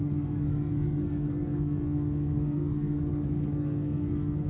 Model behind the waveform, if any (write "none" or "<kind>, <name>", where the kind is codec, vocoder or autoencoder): codec, SNAC